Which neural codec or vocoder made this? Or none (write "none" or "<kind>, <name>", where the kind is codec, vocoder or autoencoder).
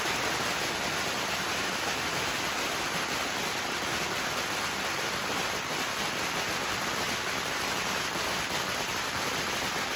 none